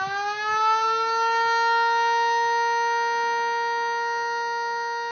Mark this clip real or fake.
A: real